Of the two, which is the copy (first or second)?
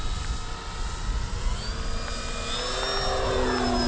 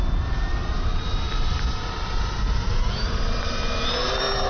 second